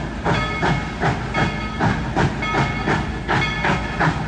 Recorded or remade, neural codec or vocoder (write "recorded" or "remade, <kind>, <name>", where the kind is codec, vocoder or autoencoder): recorded